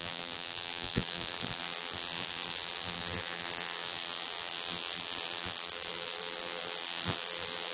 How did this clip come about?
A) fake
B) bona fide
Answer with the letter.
A